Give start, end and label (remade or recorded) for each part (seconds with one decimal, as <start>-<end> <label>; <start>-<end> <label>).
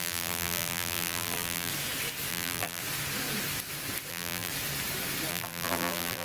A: 0.0-1.7 remade; 1.7-2.3 recorded; 2.3-2.8 remade; 2.8-4.1 recorded; 4.1-4.5 remade; 4.5-5.3 recorded; 5.3-6.2 remade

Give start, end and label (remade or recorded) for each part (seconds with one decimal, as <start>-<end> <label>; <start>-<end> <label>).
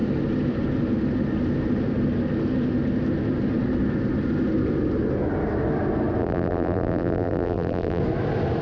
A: 0.0-6.2 recorded; 6.2-8.0 remade; 8.0-8.6 recorded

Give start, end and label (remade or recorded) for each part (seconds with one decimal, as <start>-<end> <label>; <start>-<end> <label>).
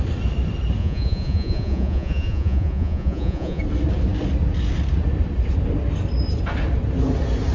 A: 0.0-0.8 recorded; 0.8-3.6 remade; 3.6-7.5 recorded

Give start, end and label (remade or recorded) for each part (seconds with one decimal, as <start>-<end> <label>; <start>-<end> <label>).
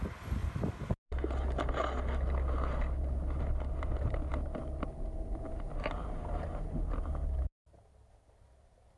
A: 0.0-9.0 recorded